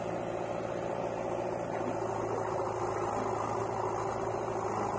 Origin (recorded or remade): recorded